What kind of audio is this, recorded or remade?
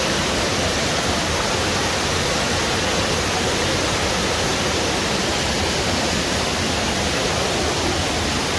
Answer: recorded